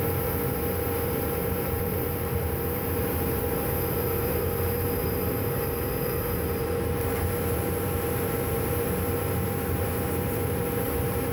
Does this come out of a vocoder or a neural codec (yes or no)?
yes